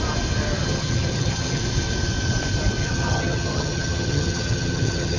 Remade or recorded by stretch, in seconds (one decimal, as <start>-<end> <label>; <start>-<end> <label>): 0.0-0.6 recorded; 0.6-1.6 remade; 1.6-2.8 recorded; 2.8-5.2 remade